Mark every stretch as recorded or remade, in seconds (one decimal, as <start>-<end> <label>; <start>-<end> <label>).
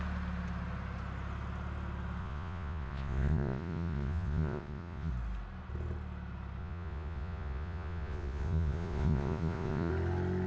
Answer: 0.0-2.2 recorded; 2.2-5.1 remade; 5.1-6.6 recorded; 6.6-9.9 remade; 9.9-10.5 recorded